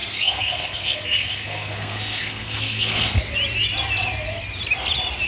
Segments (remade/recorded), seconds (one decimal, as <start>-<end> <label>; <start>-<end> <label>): 0.0-3.2 remade; 3.2-5.3 recorded